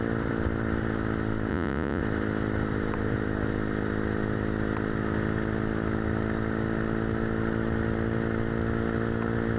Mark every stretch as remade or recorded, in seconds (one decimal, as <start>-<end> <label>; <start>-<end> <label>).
0.0-1.5 recorded; 1.5-2.0 remade; 2.0-9.6 recorded